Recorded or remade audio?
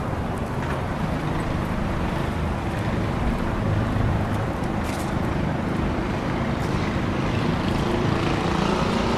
remade